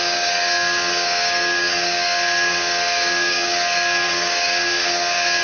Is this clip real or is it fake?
fake